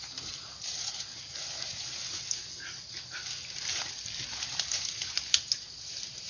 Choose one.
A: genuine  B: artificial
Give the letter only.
A